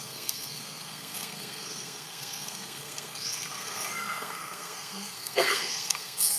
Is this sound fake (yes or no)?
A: yes